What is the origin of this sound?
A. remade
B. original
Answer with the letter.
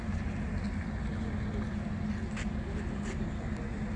B